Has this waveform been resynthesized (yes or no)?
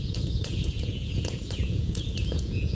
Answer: yes